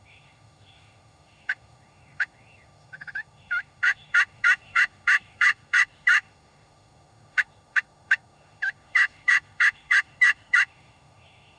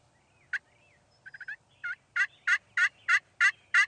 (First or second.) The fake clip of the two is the first